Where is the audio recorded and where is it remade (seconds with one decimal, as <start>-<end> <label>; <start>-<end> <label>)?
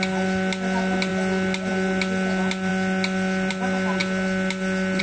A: 0.0-5.0 recorded